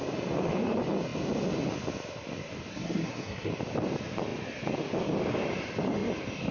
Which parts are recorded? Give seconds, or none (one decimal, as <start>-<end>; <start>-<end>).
0.0-2.7; 3.5-6.5